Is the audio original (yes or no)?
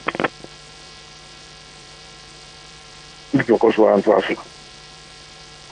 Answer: no